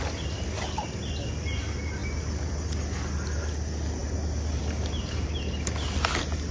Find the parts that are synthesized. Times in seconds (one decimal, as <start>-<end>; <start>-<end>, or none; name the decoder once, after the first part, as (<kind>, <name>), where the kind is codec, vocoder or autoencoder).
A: none